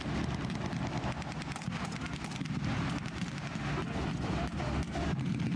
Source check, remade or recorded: recorded